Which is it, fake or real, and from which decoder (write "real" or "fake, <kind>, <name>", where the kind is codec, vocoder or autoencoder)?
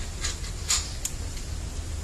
real